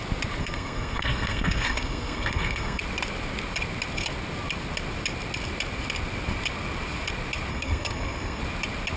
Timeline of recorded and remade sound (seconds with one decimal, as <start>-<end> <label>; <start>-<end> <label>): 0.0-0.4 recorded; 0.4-2.8 remade; 2.8-7.5 recorded; 7.5-8.4 remade; 8.4-9.0 recorded

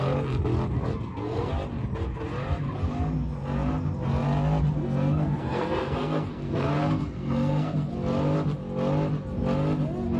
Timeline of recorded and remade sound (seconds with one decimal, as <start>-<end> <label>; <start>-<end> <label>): 0.0-0.9 recorded; 0.9-1.5 remade; 1.5-4.8 recorded; 4.8-7.9 remade; 7.9-10.2 recorded

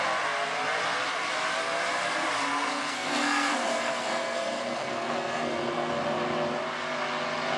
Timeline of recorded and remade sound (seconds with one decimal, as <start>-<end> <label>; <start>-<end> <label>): 0.0-2.5 recorded; 2.5-5.9 remade; 5.9-7.6 recorded

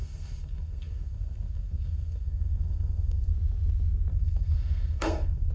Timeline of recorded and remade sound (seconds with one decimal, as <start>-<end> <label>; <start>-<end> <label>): 0.0-3.3 remade; 3.3-4.1 recorded; 4.1-5.5 remade